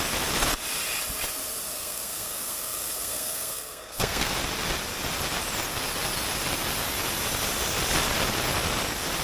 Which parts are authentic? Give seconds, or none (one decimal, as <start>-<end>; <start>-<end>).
0.0-1.7; 4.3-9.2